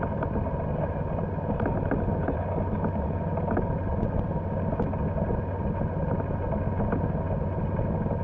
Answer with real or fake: real